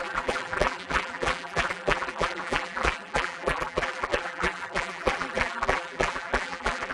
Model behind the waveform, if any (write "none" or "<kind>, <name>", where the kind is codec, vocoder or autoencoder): vocoder, BigVGAN v2